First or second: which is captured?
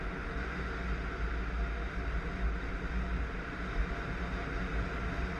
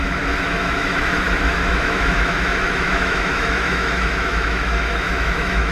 first